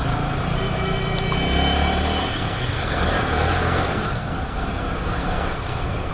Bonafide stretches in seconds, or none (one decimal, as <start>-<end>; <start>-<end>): 0.0-2.2